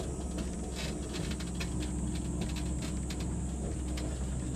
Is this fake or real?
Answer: real